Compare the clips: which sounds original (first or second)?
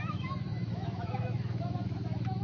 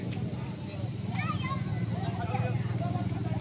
second